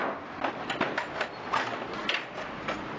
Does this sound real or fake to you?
real